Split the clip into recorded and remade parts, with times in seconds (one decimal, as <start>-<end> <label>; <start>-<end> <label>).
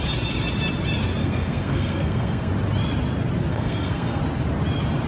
0.0-1.2 recorded; 1.2-2.5 remade; 2.5-3.5 recorded; 3.5-4.2 remade; 4.2-5.1 recorded